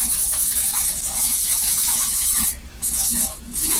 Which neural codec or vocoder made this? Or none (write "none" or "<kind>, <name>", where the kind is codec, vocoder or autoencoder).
autoencoder, DAC-VAE